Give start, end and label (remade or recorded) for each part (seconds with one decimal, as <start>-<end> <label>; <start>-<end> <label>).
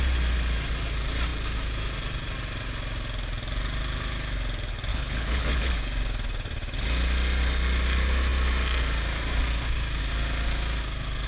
0.0-4.9 recorded; 4.9-5.8 remade; 5.8-11.3 recorded